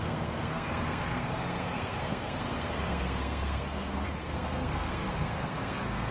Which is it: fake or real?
fake